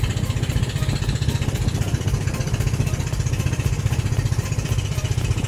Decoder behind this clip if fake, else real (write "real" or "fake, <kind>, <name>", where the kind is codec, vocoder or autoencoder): fake, vocoder, BigVGAN v2